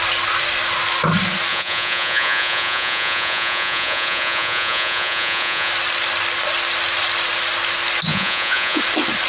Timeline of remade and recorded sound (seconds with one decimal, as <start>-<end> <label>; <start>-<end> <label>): 0.0-1.5 recorded; 1.5-5.7 remade; 5.7-8.1 recorded; 8.1-8.8 remade; 8.8-9.3 recorded

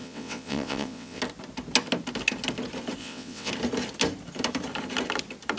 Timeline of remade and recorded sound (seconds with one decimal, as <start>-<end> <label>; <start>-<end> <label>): 0.0-1.2 remade; 1.2-3.0 recorded; 3.0-3.5 remade; 3.5-5.6 recorded

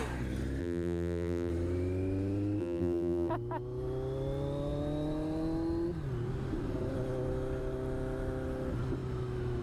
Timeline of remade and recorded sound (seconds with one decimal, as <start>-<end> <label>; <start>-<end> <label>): 0.0-0.6 recorded; 0.6-1.5 remade; 1.5-2.6 recorded; 2.6-3.3 remade; 3.3-9.6 recorded

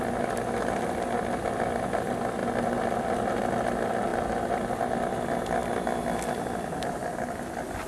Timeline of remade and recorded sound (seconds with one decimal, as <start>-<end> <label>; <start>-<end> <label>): 0.0-7.9 recorded

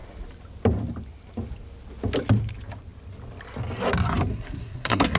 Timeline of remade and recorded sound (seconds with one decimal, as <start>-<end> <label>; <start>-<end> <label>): 0.0-4.3 recorded; 4.3-5.2 remade

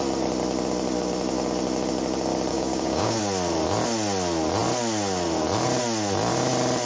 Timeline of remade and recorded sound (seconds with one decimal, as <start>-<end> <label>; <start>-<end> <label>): 0.0-2.5 recorded; 2.5-3.2 remade; 3.2-6.9 recorded